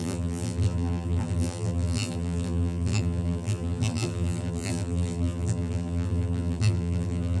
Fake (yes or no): yes